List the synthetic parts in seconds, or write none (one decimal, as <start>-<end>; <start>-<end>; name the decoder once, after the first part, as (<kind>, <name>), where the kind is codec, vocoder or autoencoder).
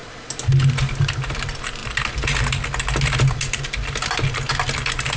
none